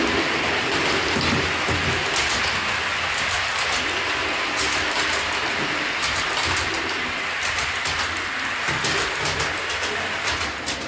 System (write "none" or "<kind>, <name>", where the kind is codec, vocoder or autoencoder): none